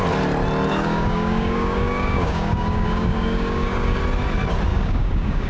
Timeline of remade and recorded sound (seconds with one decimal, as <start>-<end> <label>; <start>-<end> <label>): 0.0-0.7 recorded; 0.7-4.0 remade; 4.0-4.7 recorded; 4.7-5.5 remade